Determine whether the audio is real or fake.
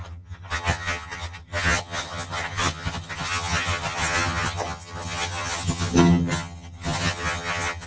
fake